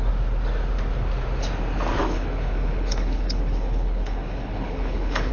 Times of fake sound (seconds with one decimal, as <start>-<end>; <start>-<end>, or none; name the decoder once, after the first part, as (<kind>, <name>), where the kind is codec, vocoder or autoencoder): 2.0-5.3 (codec, HILCodec)